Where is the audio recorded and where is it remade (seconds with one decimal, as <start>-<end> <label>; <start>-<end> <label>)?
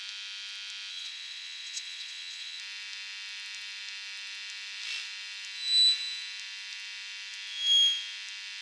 0.0-0.9 recorded; 0.9-2.6 remade; 2.6-8.6 recorded